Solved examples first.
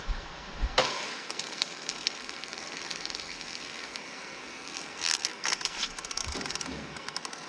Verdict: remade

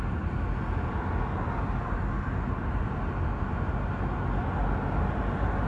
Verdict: recorded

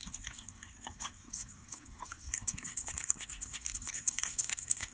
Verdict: remade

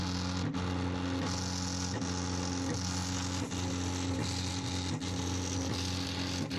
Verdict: recorded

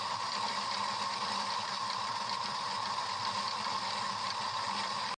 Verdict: recorded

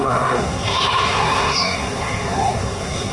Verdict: remade